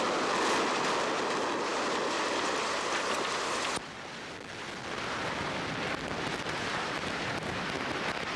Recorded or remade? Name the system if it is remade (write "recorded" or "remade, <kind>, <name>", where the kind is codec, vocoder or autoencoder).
recorded